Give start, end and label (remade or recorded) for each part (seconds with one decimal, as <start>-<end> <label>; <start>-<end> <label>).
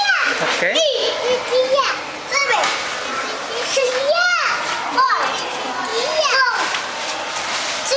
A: 0.0-2.4 recorded; 2.4-5.4 remade; 5.4-5.9 recorded; 5.9-6.6 remade; 6.6-8.0 recorded